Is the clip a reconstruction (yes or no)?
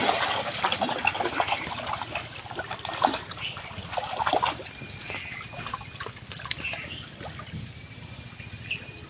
no